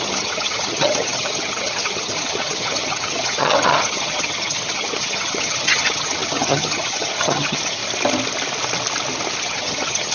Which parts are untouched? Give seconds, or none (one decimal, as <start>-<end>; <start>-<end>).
7.8-9.4